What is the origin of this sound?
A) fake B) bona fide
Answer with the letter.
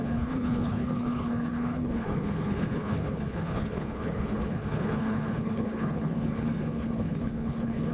A